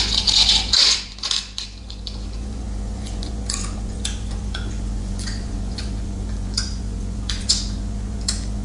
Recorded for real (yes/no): no